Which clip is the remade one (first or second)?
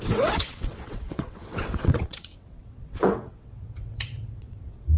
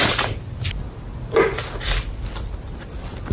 first